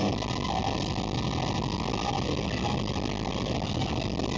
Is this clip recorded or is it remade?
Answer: recorded